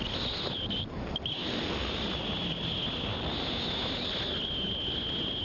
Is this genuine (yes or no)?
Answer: yes